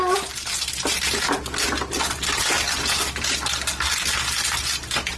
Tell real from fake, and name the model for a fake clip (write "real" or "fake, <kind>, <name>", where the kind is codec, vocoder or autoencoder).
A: real